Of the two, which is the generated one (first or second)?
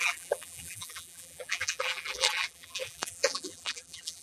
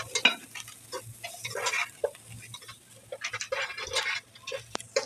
first